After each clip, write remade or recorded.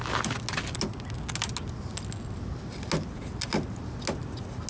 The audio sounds recorded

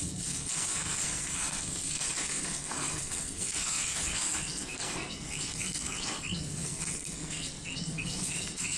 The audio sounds remade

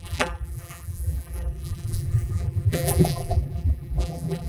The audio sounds remade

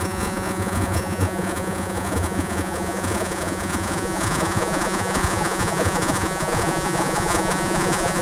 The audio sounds remade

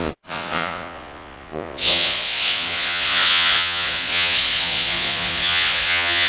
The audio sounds remade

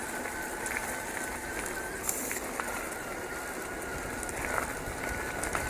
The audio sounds recorded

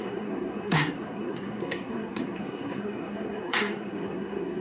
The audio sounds remade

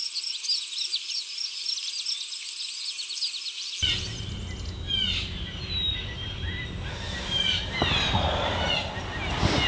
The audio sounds recorded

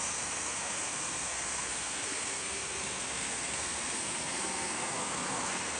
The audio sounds remade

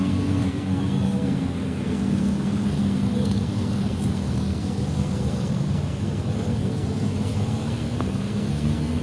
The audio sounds remade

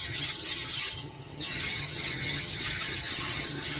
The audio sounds remade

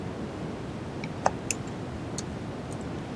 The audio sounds recorded